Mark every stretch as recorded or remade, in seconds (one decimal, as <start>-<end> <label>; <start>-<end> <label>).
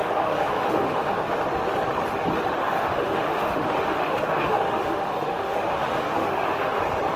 0.0-1.3 remade; 1.3-2.6 recorded; 2.6-6.8 remade; 6.8-7.2 recorded